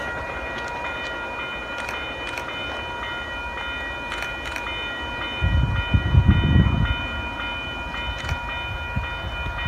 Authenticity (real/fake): real